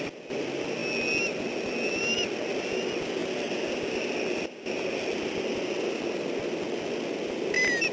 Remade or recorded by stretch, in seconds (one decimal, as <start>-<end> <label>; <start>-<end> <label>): 0.0-7.9 recorded